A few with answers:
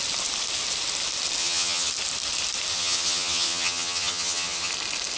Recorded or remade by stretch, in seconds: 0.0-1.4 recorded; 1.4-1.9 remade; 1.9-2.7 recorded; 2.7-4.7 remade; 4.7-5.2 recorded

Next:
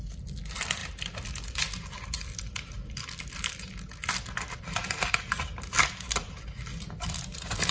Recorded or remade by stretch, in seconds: 0.0-7.7 recorded

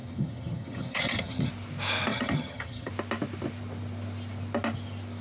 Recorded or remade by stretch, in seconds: 0.0-1.5 remade; 1.5-2.1 recorded; 2.1-2.9 remade; 2.9-5.2 recorded

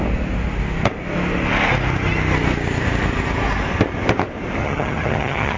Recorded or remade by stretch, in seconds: 0.0-4.6 recorded; 4.6-5.6 remade

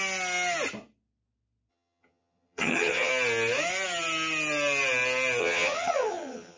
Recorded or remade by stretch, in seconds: 0.0-1.7 recorded; 1.7-3.1 remade; 3.1-5.4 recorded; 5.4-6.6 remade

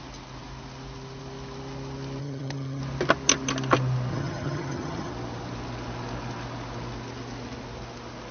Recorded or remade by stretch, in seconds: 0.0-2.2 recorded; 2.2-2.8 remade; 2.8-4.1 recorded; 4.1-5.1 remade; 5.1-8.3 recorded